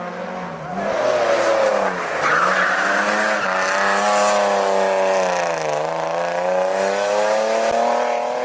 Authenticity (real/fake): real